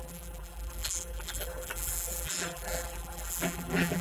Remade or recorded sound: remade